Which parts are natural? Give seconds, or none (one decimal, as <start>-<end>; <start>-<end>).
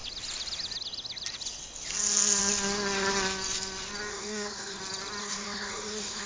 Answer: 0.0-4.1; 4.8-5.2